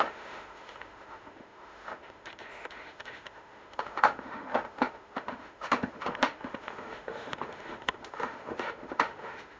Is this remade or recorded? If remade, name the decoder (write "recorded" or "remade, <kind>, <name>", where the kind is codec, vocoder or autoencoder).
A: remade, autoencoder, DAC-VAE